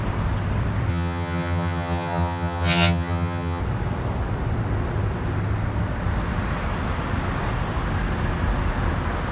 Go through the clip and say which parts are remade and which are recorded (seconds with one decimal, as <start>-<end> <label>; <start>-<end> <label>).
0.0-0.9 recorded; 0.9-3.6 remade; 3.6-9.3 recorded